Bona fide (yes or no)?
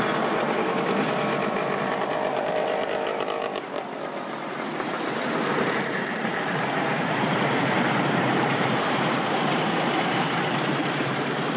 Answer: no